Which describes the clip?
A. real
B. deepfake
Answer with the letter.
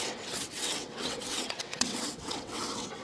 B